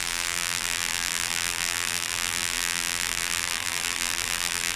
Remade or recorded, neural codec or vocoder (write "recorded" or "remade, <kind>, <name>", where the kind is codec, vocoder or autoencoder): remade, vocoder, BigVGAN v2